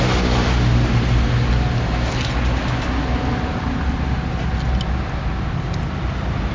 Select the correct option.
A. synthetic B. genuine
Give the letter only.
B